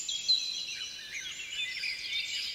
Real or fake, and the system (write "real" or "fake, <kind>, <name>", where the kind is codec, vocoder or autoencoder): real